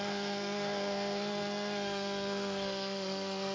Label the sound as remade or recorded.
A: remade